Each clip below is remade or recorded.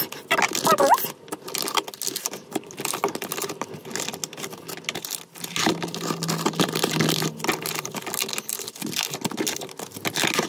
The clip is recorded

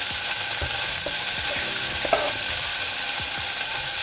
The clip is remade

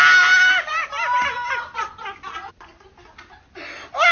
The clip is recorded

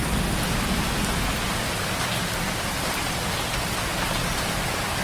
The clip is recorded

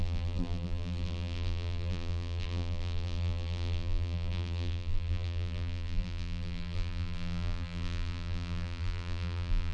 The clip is remade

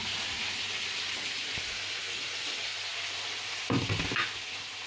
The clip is recorded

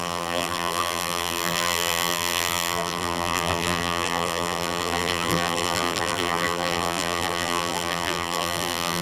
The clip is remade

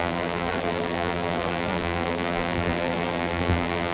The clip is remade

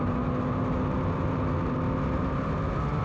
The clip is recorded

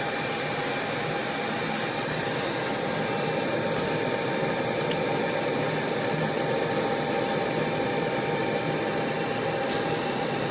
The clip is recorded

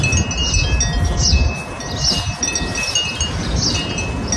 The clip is recorded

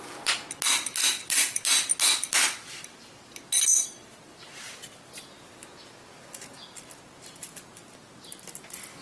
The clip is recorded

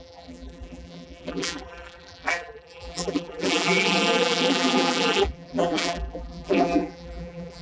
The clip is remade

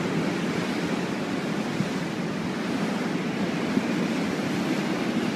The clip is recorded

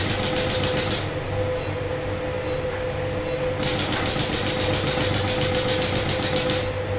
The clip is recorded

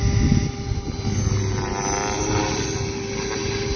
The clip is recorded